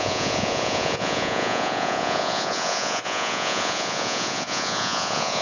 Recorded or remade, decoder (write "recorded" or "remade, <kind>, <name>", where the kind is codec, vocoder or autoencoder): remade, vocoder, Vocos